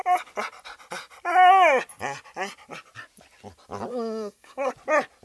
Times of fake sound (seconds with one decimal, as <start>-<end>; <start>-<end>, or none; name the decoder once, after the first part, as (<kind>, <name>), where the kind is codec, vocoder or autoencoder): 3.9-4.7 (codec, SNAC)